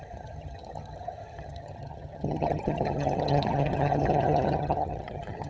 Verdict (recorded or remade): remade